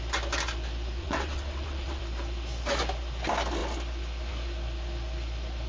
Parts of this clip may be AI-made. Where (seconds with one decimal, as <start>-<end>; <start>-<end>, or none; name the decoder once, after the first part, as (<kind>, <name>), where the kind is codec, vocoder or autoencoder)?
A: 1.0-2.0 (vocoder, WaveNeXt)